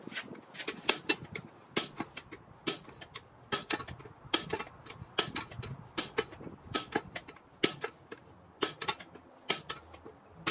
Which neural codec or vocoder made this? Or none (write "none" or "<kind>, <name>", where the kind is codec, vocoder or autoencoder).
none